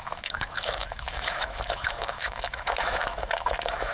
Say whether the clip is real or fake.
fake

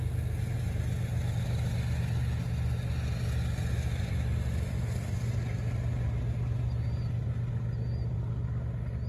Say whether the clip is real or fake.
real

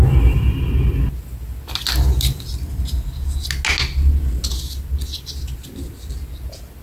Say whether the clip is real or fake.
real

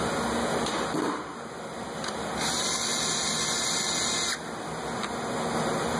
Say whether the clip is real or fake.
real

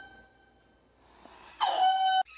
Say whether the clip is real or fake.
real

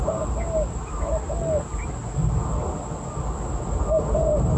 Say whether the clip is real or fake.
real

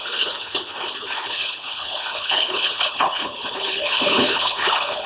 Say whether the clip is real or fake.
fake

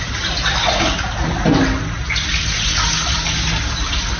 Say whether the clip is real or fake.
real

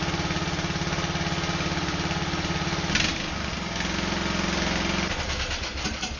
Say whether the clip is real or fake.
real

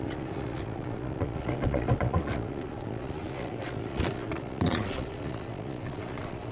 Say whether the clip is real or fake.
fake